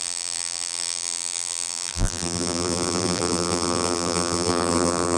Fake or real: fake